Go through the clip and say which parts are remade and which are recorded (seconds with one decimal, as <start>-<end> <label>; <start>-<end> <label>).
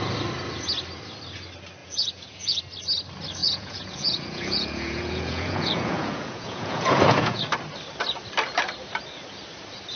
0.0-1.8 recorded; 1.8-2.6 remade; 2.6-3.4 recorded; 3.4-7.4 remade; 7.4-10.0 recorded